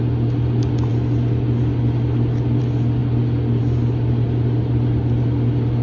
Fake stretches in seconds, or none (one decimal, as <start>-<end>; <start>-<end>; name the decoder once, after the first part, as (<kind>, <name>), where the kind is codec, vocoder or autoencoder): none